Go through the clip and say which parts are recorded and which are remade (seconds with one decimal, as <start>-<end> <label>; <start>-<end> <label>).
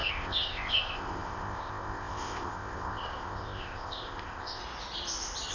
0.0-4.6 remade; 4.6-5.5 recorded